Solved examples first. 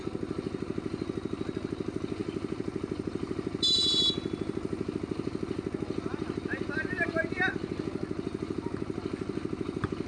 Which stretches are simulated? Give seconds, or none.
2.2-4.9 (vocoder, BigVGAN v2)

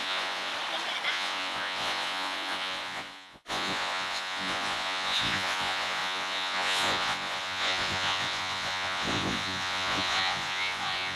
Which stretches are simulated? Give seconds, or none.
0.0-0.5 (vocoder, Vocos); 1.1-11.2

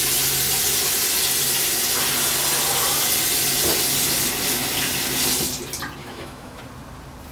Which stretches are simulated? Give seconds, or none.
6.0-6.6 (autoencoder, DAC-VAE)

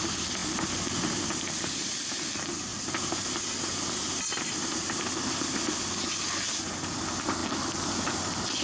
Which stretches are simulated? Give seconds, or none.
none

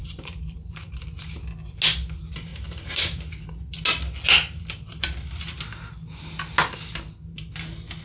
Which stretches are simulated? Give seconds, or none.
0.0-1.0 (vocoder, BigVGAN v2); 2.5-3.4

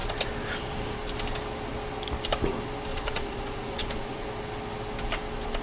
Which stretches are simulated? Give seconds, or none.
2.9-4.3 (vocoder, Vocos)

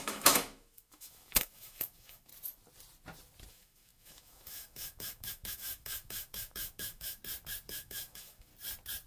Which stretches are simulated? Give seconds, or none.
0.0-2.3 (autoencoder, DAC-VAE); 3.5-7.2; 7.7-8.5